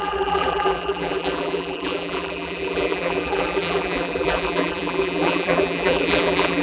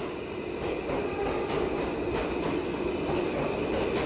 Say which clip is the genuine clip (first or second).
second